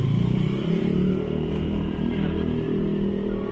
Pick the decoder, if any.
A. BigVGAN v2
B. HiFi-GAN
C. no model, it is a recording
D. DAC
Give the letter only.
A